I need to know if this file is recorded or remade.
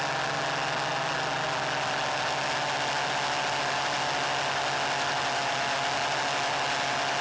recorded